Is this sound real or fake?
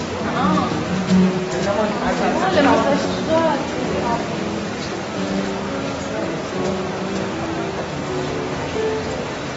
real